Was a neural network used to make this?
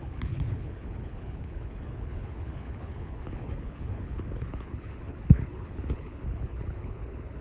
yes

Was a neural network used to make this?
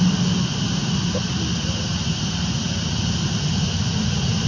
no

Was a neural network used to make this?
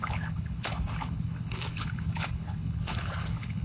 yes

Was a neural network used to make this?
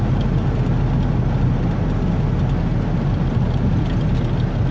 no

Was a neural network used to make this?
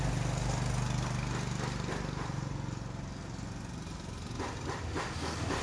no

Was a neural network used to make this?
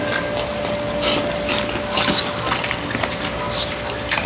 no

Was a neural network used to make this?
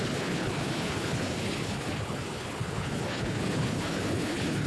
yes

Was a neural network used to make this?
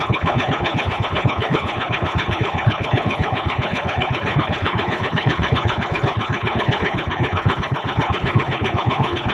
yes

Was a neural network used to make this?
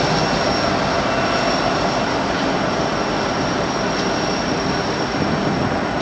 no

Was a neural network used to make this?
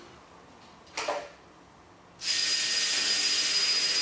no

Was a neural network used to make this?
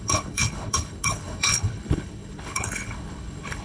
yes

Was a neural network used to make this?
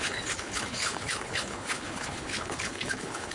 yes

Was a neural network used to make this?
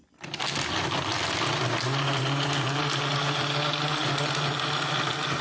no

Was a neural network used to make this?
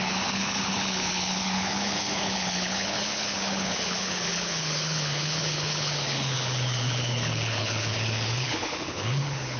yes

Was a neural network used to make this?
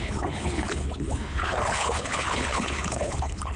yes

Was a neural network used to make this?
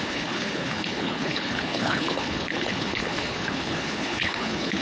yes